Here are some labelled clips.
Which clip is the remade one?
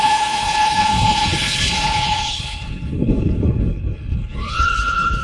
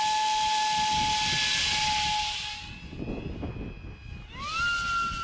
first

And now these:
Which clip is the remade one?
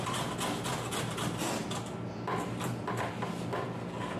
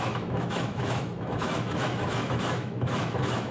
second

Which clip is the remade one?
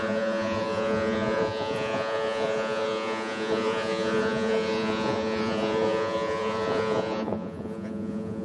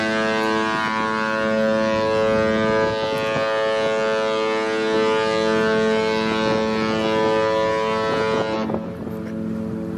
first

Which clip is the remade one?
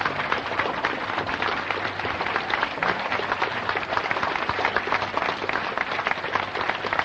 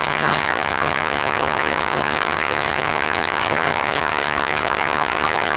second